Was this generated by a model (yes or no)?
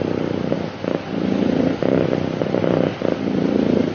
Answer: no